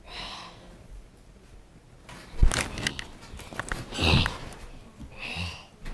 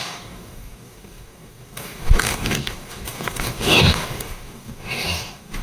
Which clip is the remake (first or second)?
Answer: second